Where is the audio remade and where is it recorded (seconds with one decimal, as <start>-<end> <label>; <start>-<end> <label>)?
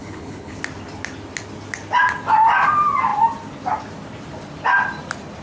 0.0-0.6 remade; 0.6-5.4 recorded